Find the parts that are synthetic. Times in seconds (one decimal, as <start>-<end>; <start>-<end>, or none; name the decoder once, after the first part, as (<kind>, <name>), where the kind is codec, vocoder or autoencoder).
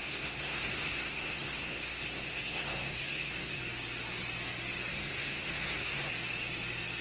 0.0-3.6 (codec, SNAC); 4.9-6.1